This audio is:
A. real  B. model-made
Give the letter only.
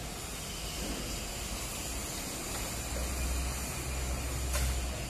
A